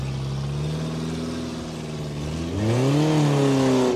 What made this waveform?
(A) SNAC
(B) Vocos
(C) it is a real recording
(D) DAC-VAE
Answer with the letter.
C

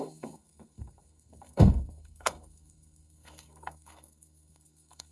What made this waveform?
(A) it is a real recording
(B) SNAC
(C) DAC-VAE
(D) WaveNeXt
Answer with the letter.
B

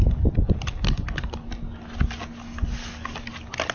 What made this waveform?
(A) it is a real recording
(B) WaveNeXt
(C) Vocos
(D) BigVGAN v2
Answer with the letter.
A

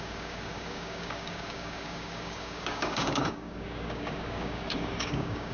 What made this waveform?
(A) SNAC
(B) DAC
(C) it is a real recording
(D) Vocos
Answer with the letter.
B